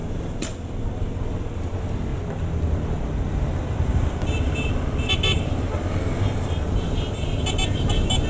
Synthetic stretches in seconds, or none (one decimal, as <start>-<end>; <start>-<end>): none